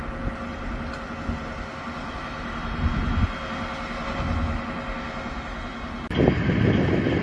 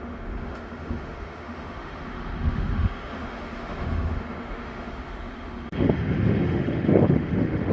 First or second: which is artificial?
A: second